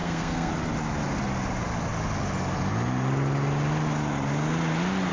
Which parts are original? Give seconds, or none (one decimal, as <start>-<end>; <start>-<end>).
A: 0.5-5.1